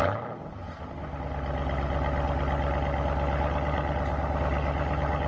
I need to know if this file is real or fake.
real